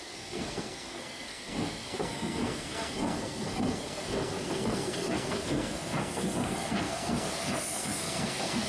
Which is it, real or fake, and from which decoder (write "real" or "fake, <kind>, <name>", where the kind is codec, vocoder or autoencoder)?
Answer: fake, codec, SNAC